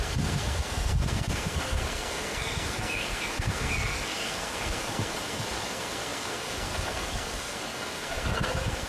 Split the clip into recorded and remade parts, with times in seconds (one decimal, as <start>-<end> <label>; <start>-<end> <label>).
0.0-8.9 remade